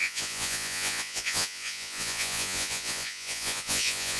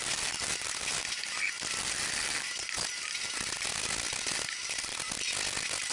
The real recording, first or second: second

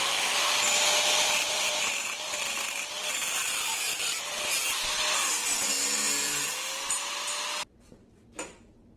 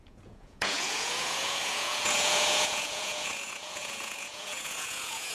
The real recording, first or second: first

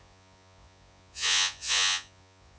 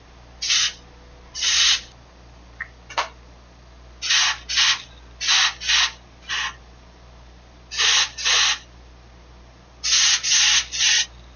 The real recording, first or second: second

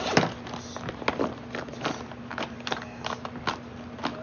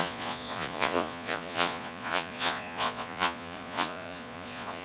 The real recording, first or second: first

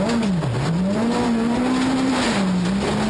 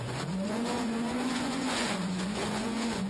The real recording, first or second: first